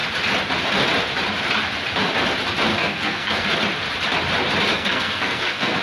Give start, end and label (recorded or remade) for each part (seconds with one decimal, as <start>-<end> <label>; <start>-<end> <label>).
0.0-2.7 recorded; 2.7-3.5 remade; 3.5-4.7 recorded; 4.7-5.8 remade